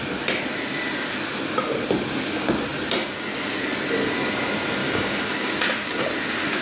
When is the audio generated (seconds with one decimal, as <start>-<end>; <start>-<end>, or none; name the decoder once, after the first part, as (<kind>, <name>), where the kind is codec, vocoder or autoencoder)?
4.8-5.5 (codec, DAC)